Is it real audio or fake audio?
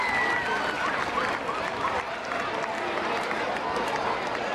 real